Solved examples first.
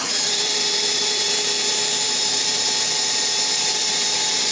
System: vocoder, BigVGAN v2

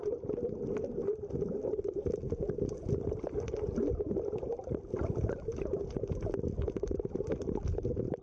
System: vocoder, BigVGAN v2